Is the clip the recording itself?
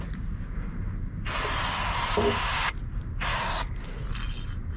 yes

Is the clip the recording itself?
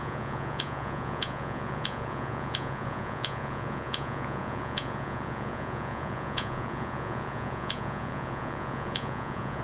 no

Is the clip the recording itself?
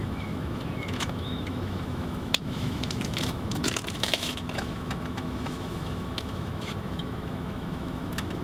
no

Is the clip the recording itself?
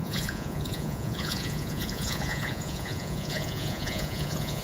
no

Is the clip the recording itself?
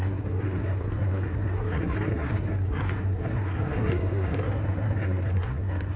no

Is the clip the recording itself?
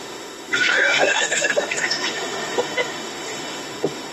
no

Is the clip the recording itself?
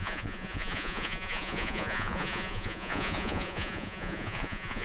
no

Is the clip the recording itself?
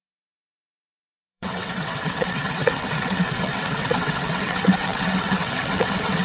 no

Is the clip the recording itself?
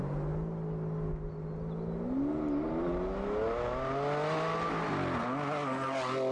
yes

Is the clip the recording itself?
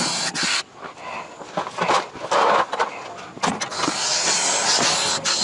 yes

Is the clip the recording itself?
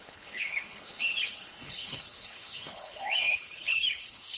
no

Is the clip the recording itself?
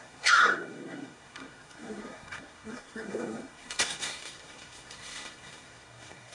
no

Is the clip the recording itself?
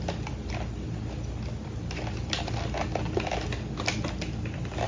yes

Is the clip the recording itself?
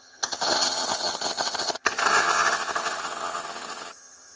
no